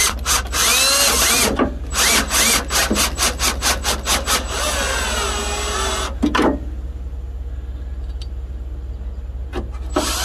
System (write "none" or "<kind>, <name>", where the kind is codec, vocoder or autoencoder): none